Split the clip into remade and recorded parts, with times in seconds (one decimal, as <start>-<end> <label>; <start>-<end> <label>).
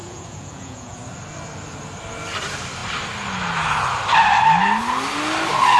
0.0-1.0 remade; 1.0-5.8 recorded